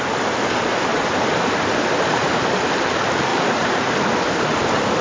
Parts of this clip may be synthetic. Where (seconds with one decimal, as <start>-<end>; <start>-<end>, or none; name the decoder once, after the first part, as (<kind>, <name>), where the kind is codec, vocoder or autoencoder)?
0.9-1.8 (vocoder, BigVGAN v2); 3.3-3.9